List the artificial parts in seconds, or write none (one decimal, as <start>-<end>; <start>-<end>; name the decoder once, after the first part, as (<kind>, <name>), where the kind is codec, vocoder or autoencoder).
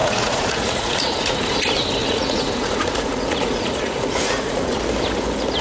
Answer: 0.0-1.6 (vocoder, Vocos); 2.0-4.8